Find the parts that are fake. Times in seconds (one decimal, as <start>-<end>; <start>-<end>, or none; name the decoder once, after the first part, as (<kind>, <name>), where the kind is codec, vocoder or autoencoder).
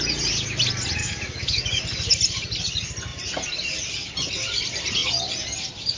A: 1.0-1.8 (autoencoder, DAC-VAE)